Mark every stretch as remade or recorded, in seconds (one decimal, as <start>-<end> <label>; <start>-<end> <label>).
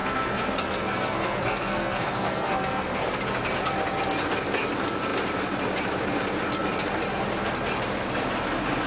0.0-3.0 remade; 3.0-8.9 recorded